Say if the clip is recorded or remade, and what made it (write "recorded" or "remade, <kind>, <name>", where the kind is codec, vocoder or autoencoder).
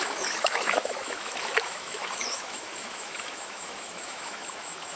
remade, autoencoder, DAC-VAE